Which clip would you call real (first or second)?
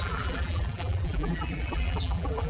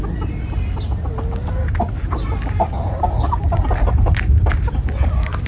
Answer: second